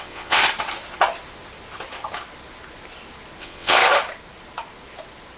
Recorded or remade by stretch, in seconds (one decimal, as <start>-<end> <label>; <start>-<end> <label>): 0.0-0.4 remade; 0.4-3.4 recorded; 3.4-3.8 remade; 3.8-5.4 recorded